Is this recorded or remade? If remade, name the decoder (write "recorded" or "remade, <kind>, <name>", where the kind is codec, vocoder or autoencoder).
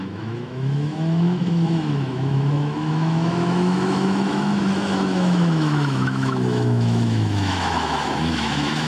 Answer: remade, autoencoder, DAC-VAE